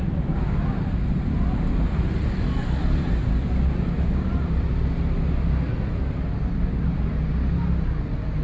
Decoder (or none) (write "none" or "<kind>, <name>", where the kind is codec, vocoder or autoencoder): none